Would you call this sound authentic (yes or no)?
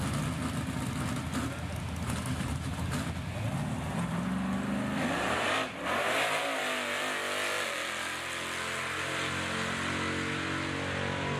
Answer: yes